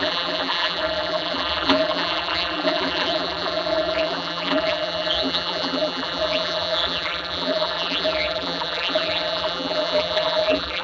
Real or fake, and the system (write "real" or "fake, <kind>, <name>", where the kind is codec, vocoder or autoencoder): fake, vocoder, BigVGAN v2